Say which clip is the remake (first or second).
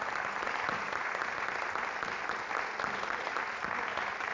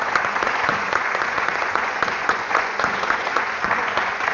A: second